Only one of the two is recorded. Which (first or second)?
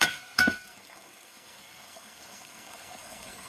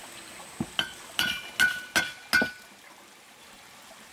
second